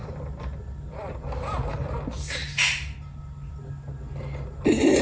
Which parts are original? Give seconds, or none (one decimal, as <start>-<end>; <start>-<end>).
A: 0.0-5.0

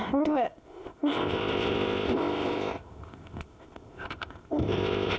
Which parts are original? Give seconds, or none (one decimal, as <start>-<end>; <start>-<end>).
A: none

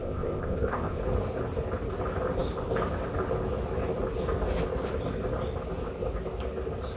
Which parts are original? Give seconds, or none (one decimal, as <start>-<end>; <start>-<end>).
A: 1.0-7.0

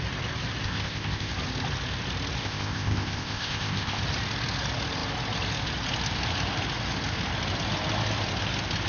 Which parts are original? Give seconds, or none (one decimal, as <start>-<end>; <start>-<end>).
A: 0.0-0.6; 1.3-2.4; 4.0-8.9

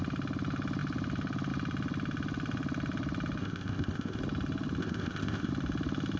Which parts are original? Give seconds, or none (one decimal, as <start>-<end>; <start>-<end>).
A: 0.0-3.4; 4.2-4.8; 5.5-6.2

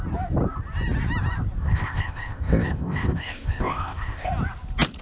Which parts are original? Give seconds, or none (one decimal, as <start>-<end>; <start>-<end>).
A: 0.0-1.6; 4.3-5.0

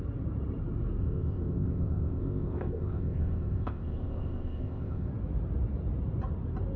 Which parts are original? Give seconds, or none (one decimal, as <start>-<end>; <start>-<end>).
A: 0.0-1.0; 5.1-6.8